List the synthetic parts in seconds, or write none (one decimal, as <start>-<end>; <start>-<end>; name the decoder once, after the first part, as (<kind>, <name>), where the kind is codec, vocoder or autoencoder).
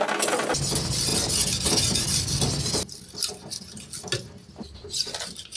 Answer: none